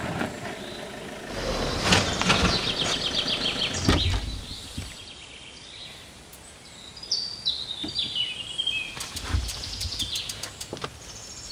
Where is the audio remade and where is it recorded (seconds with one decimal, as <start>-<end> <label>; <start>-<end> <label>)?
0.0-11.5 recorded